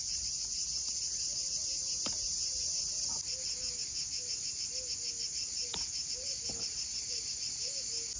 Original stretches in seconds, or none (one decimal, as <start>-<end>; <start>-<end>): 0.0-1.6; 2.8-6.9; 7.7-8.2